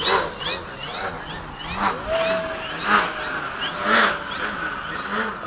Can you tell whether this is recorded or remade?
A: recorded